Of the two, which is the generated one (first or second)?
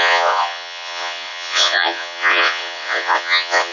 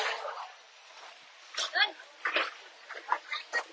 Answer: first